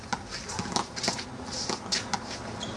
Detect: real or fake real